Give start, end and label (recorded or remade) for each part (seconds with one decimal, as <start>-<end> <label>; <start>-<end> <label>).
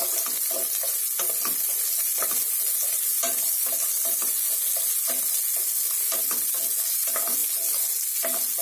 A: 0.0-8.6 recorded